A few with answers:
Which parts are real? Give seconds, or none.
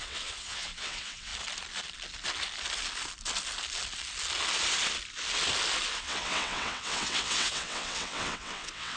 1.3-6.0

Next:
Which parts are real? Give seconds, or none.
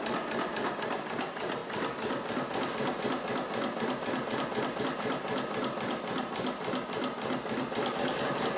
0.0-8.6